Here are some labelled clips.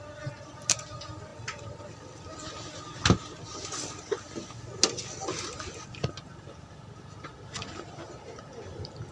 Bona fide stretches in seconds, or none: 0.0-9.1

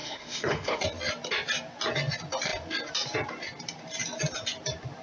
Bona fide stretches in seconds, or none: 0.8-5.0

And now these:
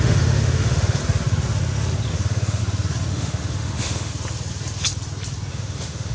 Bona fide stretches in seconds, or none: 1.0-2.1; 2.6-3.1; 4.1-5.5